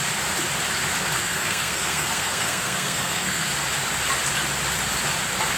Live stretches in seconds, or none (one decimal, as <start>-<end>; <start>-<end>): 0.0-1.2; 3.5-5.6